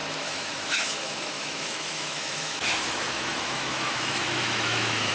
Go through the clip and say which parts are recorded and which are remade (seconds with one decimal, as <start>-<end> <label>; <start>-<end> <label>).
0.0-5.1 remade